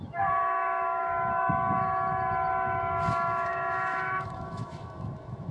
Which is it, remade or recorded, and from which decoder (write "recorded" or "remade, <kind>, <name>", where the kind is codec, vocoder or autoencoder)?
remade, autoencoder, DAC-VAE